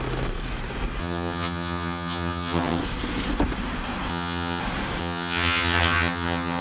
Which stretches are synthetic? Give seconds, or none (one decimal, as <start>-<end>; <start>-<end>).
1.0-2.8; 4.1-4.6; 5.0-6.6